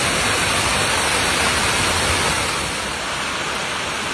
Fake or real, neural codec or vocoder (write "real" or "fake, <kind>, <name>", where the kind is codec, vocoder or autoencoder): real